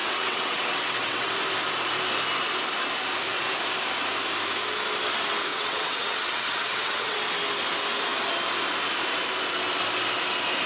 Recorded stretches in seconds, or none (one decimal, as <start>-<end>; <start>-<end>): 1.3-5.5; 7.2-10.7